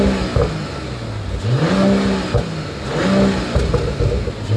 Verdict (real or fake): real